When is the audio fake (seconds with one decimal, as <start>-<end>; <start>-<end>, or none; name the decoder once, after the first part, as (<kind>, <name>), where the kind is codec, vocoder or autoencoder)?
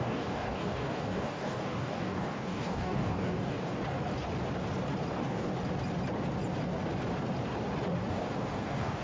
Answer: 0.0-3.8 (codec, DAC); 5.1-5.5; 8.1-9.0